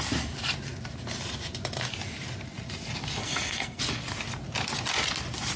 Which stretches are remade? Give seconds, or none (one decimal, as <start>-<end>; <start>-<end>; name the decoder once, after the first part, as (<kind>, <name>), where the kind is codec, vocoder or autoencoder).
3.2-3.8 (codec, SNAC)